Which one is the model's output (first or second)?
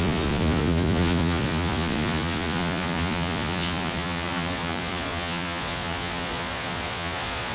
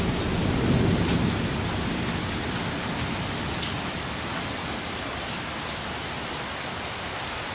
first